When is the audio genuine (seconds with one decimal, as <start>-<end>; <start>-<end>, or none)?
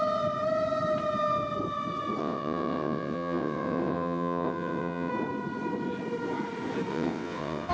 0.0-2.2; 5.1-6.9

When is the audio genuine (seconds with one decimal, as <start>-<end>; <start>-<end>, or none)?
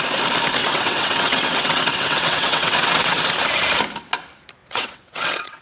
0.0-0.6; 3.2-4.6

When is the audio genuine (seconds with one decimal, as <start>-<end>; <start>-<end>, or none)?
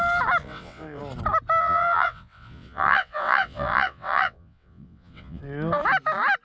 0.0-0.4; 1.0-1.6; 5.4-6.4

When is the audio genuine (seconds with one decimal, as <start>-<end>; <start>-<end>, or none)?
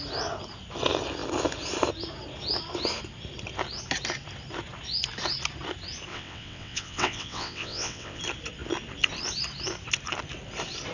0.0-6.1; 8.2-10.9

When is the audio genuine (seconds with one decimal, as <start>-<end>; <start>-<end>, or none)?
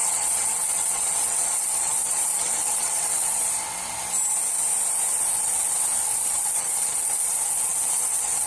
3.5-6.1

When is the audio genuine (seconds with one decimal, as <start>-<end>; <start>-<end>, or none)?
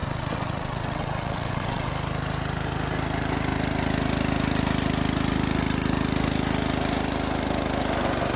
1.9-8.4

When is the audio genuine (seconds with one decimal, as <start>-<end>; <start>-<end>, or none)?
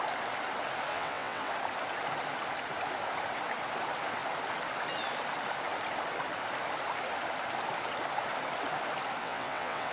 0.0-0.9; 1.5-9.2